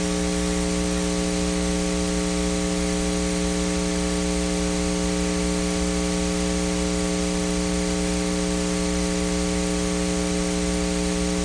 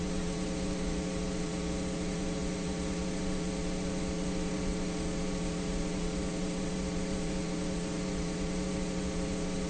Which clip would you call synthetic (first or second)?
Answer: second